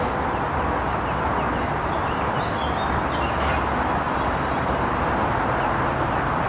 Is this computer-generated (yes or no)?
no